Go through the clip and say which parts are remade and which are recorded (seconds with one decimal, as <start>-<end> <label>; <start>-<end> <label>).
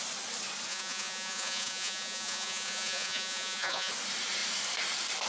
0.0-0.7 recorded; 0.7-3.9 remade; 3.9-5.3 recorded